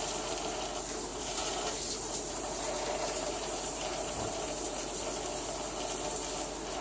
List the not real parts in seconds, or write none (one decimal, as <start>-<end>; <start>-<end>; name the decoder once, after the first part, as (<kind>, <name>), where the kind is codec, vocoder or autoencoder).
1.1-4.6 (vocoder, BigVGAN v2)